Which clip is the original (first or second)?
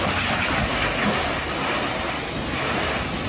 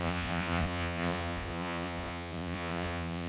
first